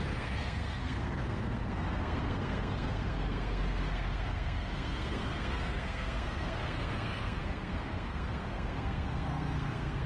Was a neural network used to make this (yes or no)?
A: yes